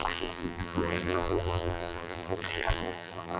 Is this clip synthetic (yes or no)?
yes